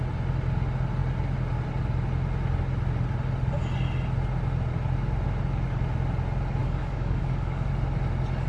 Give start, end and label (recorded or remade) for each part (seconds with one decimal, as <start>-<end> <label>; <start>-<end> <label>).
0.0-6.6 recorded; 6.6-7.7 remade; 7.7-8.5 recorded